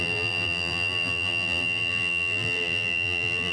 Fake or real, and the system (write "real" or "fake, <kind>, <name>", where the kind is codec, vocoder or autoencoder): fake, vocoder, BigVGAN v2